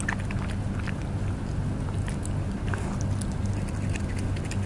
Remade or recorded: recorded